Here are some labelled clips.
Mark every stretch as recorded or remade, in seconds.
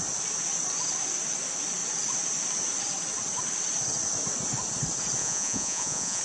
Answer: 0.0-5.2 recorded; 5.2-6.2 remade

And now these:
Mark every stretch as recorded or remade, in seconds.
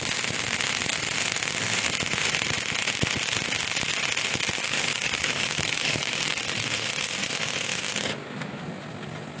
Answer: 0.0-4.6 recorded; 4.6-6.4 remade; 6.4-9.4 recorded